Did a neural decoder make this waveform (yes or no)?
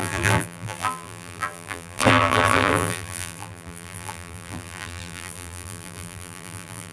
yes